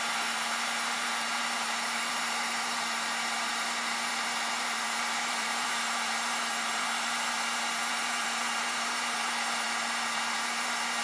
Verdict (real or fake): fake